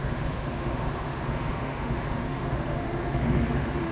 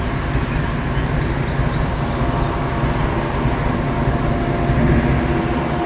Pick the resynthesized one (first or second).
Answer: first